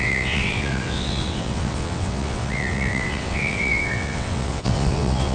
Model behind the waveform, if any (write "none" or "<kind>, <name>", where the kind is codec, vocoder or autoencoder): vocoder, WaveNeXt